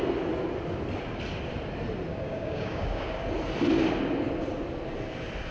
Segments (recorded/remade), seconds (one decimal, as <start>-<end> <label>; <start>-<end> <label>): 0.0-2.1 recorded; 2.1-3.2 remade; 3.2-5.5 recorded